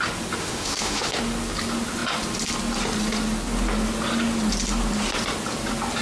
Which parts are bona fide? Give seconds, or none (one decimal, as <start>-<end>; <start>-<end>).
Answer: 0.0-0.4; 1.2-6.0